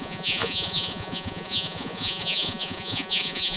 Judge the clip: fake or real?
fake